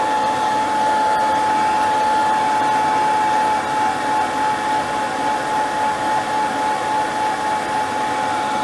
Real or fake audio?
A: real